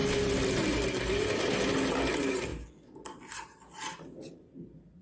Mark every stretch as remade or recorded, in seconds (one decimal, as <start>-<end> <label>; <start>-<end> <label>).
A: 0.0-5.0 recorded